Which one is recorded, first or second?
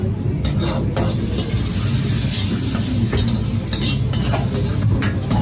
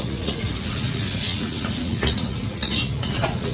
first